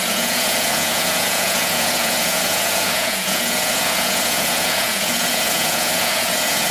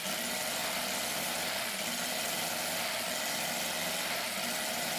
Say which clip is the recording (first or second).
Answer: second